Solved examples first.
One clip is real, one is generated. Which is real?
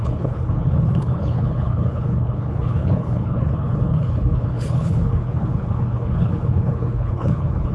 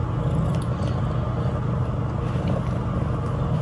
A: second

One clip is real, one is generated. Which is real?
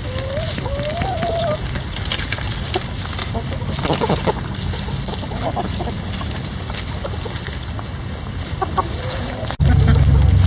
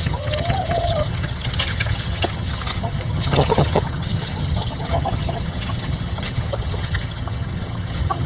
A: first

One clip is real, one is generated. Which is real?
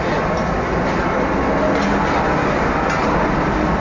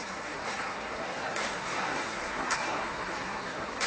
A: first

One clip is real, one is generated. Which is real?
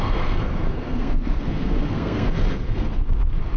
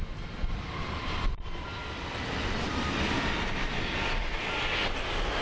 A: second